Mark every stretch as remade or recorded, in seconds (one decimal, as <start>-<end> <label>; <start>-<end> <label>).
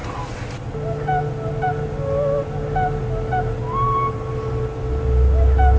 0.0-5.8 recorded